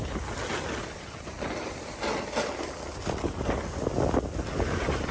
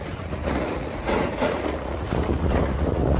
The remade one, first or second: second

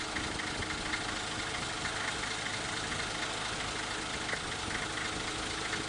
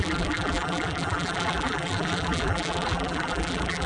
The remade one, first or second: second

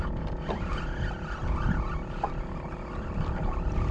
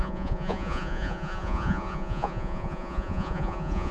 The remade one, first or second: second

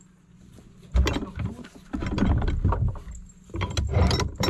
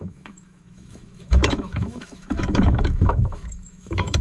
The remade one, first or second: second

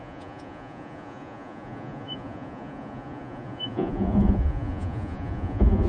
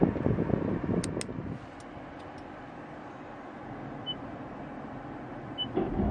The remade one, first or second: first